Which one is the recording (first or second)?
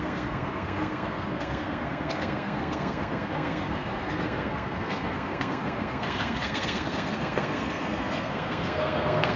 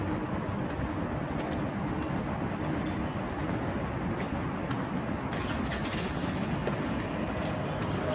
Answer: second